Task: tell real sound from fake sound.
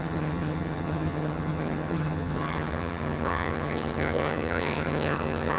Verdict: fake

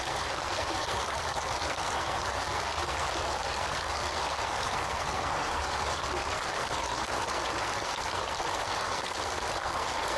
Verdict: fake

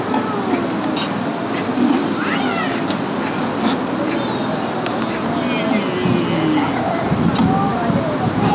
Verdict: real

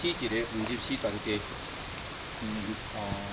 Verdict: real